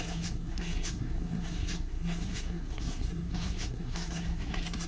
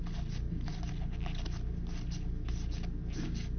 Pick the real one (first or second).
second